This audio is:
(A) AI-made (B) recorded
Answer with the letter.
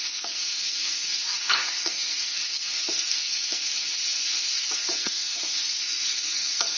A